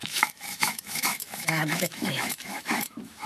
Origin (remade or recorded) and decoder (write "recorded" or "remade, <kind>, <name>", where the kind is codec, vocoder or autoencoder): remade, autoencoder, DAC-VAE